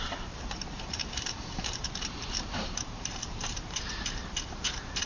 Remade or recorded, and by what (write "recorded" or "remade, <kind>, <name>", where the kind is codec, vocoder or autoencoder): remade, vocoder, BigVGAN v2